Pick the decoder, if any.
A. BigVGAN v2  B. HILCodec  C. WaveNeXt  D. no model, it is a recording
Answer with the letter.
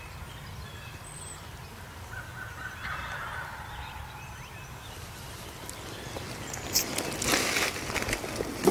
D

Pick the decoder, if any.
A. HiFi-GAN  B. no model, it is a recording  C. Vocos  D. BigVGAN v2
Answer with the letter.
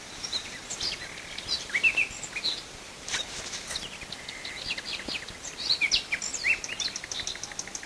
B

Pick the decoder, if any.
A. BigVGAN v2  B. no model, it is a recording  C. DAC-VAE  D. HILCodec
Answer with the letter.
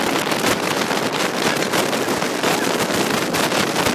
B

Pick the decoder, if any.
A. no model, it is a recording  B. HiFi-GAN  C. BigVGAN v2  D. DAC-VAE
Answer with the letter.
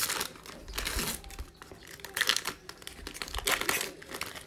A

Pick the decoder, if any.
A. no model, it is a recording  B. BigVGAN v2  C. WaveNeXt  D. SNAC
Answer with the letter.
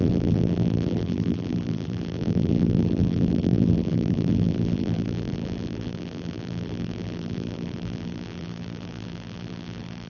B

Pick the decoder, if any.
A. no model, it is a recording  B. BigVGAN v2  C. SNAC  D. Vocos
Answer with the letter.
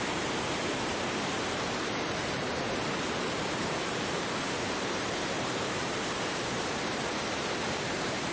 B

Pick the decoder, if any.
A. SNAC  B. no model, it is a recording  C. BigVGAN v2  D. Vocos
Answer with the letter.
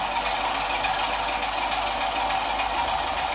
B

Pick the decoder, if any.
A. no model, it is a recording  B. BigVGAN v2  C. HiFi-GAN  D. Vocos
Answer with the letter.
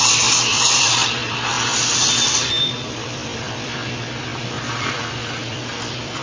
B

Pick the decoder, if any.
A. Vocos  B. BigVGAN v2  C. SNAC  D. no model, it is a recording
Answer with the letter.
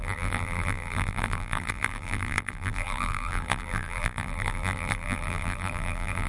B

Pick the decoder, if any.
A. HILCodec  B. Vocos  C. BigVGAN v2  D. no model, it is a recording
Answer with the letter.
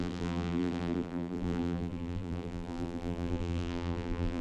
C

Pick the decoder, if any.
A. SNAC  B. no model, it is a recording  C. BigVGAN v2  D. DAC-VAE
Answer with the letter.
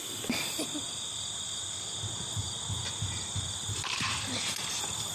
B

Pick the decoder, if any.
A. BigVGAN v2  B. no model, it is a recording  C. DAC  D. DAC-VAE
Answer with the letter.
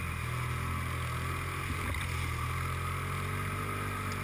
B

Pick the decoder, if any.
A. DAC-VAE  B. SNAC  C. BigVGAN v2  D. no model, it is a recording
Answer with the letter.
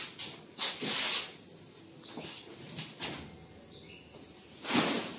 D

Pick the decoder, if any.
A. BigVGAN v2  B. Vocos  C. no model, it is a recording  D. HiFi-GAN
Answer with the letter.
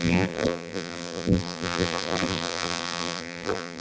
A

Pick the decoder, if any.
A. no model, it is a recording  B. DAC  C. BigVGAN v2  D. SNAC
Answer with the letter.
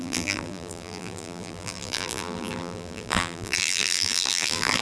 C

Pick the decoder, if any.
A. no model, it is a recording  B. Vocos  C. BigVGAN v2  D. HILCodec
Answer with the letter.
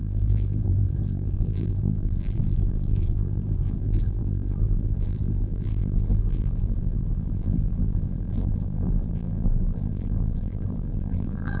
C